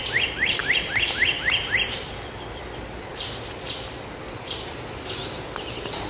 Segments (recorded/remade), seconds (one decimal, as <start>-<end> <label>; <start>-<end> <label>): 0.0-6.1 recorded